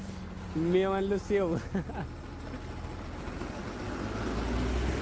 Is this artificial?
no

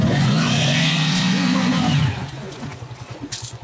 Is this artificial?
yes